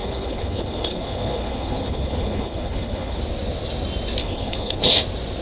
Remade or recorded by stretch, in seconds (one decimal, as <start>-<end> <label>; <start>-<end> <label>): 0.0-3.2 remade; 3.2-4.2 recorded; 4.2-4.8 remade; 4.8-5.4 recorded